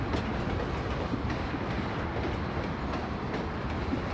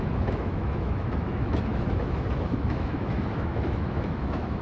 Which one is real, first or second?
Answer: first